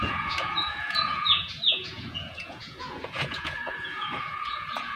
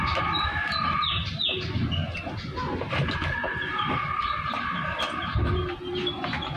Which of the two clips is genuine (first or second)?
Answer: second